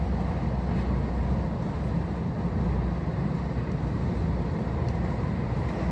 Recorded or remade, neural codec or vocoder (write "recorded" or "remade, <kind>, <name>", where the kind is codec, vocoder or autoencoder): recorded